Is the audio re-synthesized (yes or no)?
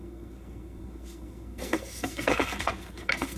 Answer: yes